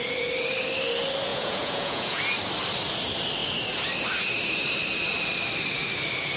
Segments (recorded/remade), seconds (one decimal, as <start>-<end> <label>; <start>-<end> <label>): 0.0-1.3 recorded; 1.3-2.2 remade; 2.2-6.4 recorded